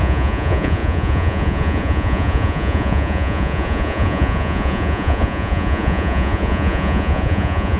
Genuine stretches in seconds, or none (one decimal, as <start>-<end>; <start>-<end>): none